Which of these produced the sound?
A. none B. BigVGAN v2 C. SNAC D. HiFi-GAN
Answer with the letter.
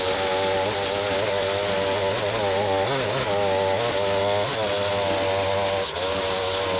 A